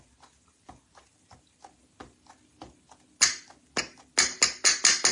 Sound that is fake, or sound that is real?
real